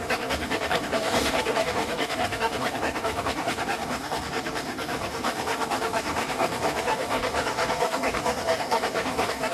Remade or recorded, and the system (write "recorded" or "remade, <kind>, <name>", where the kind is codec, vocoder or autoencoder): remade, codec, DAC